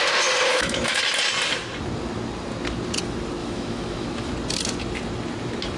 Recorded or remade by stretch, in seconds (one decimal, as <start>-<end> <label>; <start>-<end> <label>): 0.0-0.5 recorded; 0.5-1.0 remade; 1.0-3.4 recorded; 3.4-4.3 remade; 4.3-5.8 recorded